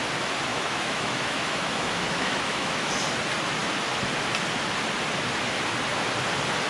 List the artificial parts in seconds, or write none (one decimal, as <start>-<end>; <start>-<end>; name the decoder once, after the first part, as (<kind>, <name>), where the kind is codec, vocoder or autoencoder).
0.5-2.9 (autoencoder, DAC-VAE)